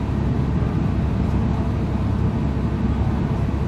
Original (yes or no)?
yes